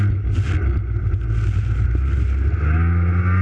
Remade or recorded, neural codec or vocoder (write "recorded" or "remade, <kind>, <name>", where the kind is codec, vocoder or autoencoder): recorded